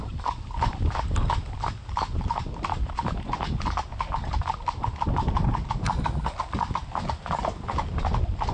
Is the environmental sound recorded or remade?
recorded